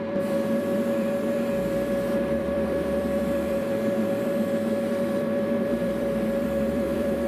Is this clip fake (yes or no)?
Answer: yes